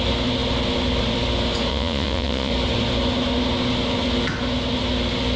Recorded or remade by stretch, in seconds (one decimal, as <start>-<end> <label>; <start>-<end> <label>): 0.0-1.7 recorded; 1.7-2.5 remade; 2.5-5.4 recorded